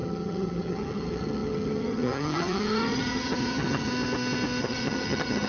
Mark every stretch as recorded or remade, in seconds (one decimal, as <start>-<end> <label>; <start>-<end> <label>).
0.0-3.9 remade; 3.9-4.6 recorded; 4.6-5.5 remade